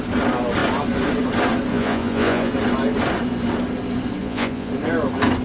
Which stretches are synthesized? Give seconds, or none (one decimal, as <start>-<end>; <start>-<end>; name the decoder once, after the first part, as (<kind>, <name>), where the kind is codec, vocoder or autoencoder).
1.7-2.5 (vocoder, Vocos); 4.2-4.7